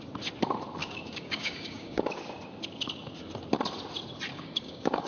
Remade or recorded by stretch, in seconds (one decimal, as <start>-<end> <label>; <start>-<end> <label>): 0.0-0.8 recorded; 0.8-2.1 remade; 2.1-4.3 recorded; 4.3-5.1 remade